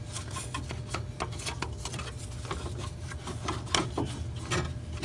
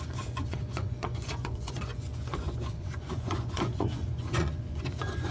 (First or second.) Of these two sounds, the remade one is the second